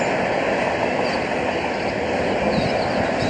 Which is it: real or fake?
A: real